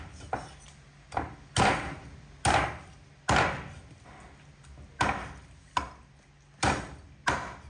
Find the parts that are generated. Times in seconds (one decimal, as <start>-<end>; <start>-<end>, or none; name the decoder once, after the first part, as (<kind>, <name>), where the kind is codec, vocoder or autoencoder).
none